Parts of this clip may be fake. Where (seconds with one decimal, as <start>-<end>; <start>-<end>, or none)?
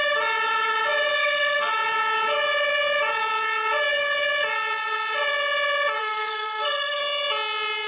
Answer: 1.2-1.7; 6.0-7.0